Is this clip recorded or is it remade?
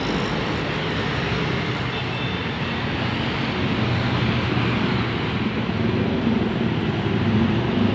recorded